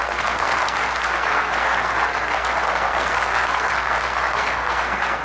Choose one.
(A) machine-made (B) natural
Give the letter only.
A